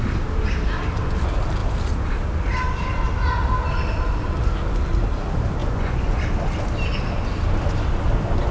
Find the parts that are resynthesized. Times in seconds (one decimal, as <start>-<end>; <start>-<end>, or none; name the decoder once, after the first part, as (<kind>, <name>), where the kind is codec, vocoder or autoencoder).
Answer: 5.6-6.2 (vocoder, Vocos)